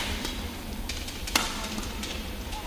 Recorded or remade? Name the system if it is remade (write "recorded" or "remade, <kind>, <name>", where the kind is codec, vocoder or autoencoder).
recorded